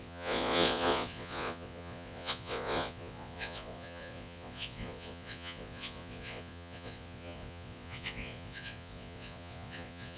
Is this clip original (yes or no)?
no